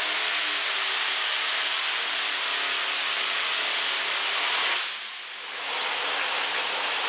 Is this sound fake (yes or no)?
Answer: no